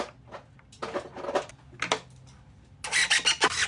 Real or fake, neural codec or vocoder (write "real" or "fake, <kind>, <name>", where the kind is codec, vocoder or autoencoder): real